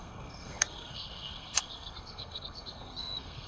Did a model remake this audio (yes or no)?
yes